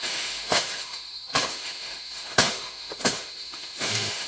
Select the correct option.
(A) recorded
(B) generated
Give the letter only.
B